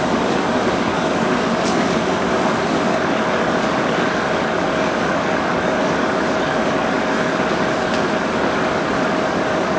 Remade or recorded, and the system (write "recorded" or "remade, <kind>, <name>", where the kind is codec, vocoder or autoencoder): remade, codec, DAC